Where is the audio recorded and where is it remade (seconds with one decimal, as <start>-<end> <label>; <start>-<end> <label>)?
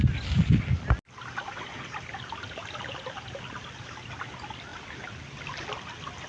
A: 0.0-6.3 recorded